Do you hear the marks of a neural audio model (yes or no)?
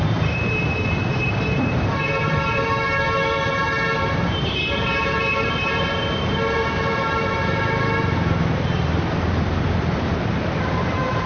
yes